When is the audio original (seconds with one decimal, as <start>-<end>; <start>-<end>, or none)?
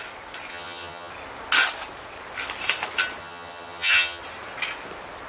0.0-0.5; 1.1-3.2; 4.2-5.3